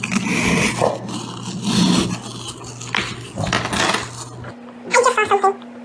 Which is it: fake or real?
real